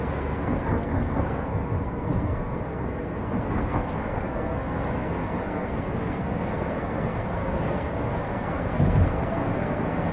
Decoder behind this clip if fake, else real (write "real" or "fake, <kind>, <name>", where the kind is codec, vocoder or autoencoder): fake, codec, SNAC